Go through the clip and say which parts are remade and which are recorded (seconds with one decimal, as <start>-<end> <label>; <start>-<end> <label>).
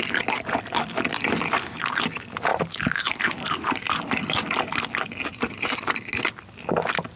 0.0-2.5 recorded; 2.5-3.9 remade; 3.9-5.3 recorded; 5.3-6.0 remade; 6.0-7.2 recorded